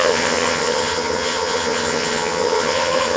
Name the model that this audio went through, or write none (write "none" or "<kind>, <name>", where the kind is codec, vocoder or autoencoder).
vocoder, HiFi-GAN